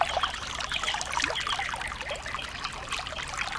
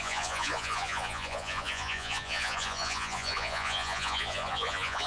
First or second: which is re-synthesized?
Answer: second